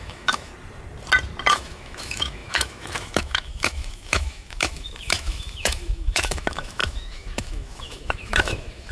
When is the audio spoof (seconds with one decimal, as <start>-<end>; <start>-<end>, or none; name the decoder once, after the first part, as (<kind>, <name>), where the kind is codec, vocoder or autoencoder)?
0.0-0.5 (autoencoder, DAC-VAE); 1.5-8.9